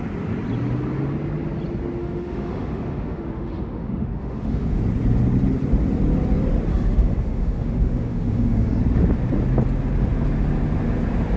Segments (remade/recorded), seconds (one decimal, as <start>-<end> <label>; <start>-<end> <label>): 0.0-2.0 recorded; 2.0-4.8 remade; 4.8-6.7 recorded; 6.7-8.8 remade; 8.8-11.4 recorded